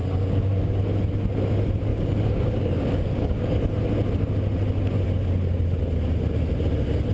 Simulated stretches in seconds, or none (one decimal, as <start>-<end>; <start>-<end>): 0.0-0.8; 1.9-3.6